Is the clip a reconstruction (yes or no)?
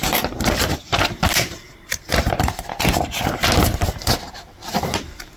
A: yes